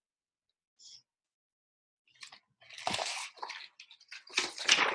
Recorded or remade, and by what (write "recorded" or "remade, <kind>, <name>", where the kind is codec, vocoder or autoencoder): recorded